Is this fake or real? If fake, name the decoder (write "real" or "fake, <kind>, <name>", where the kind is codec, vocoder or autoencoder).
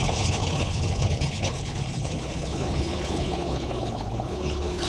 fake, codec, HILCodec